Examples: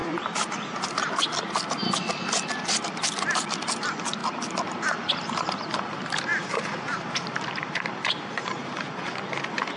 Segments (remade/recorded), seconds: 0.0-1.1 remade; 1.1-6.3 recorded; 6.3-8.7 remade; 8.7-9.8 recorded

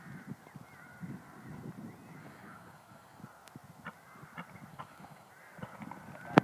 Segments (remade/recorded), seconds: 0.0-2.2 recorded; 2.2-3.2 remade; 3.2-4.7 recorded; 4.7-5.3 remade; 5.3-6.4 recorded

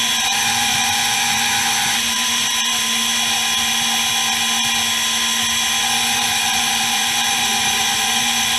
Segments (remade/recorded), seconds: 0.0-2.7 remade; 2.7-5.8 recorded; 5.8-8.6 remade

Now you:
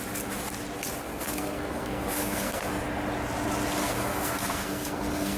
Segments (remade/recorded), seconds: 0.0-1.0 recorded; 1.0-2.8 remade; 2.8-3.8 recorded; 3.8-5.4 remade

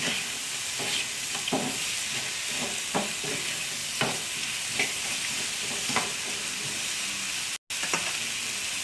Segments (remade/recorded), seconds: 0.0-8.8 recorded

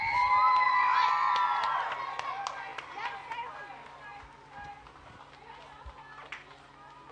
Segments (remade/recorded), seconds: 0.0-7.1 recorded

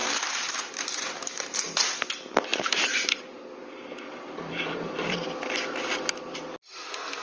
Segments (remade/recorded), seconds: 0.0-2.1 remade; 2.1-2.5 recorded; 2.5-5.3 remade; 5.3-7.2 recorded